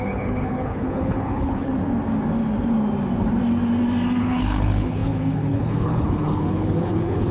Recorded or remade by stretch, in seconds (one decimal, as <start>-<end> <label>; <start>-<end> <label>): 0.0-1.7 remade; 1.7-4.2 recorded; 4.2-7.3 remade